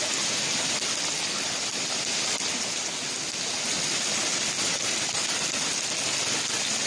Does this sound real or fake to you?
real